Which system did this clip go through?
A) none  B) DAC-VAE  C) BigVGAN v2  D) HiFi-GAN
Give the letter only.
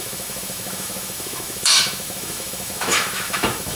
B